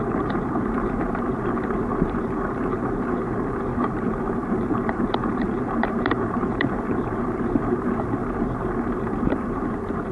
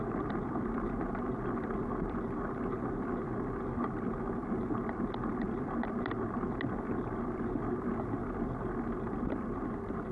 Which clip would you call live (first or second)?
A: second